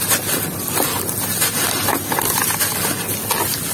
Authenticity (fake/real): real